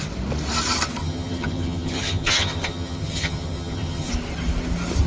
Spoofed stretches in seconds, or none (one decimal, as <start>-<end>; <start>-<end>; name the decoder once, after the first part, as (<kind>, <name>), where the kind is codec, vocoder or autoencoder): 1.0-4.1 (vocoder, HiFi-GAN)